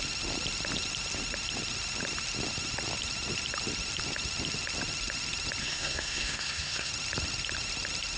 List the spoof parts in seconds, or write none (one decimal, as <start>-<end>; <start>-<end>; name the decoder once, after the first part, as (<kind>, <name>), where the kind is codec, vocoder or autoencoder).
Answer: 5.6-6.9 (codec, SNAC)